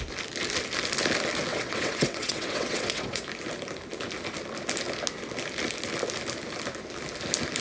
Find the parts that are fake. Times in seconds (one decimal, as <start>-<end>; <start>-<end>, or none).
1.5-3.2